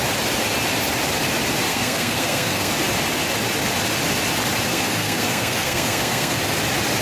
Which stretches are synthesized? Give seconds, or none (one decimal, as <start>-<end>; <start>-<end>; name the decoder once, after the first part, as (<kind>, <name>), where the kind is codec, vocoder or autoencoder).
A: 1.7-2.7 (codec, SNAC); 4.7-6.4

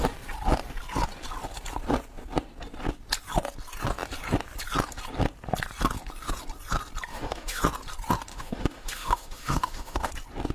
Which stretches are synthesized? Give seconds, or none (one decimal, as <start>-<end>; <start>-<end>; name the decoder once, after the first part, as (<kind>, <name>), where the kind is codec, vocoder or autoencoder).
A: 7.1-7.6 (autoencoder, DAC-VAE); 8.3-10.1

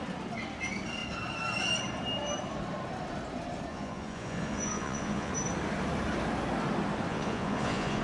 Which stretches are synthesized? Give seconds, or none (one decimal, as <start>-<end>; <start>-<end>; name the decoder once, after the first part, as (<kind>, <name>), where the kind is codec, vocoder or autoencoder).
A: 3.7-5.3 (vocoder, Vocos); 7.1-8.0